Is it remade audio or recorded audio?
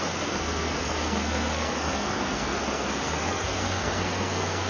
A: remade